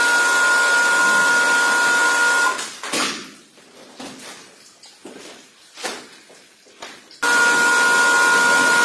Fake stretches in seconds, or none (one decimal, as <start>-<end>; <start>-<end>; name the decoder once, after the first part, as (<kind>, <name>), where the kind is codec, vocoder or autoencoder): none